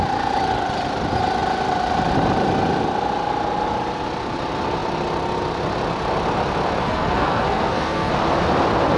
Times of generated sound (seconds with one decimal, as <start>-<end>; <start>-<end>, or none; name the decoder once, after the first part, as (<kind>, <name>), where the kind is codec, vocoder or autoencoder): 6.8-8.1 (codec, SNAC)